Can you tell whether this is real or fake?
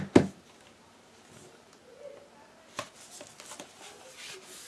real